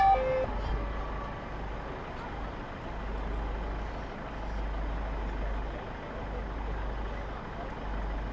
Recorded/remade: recorded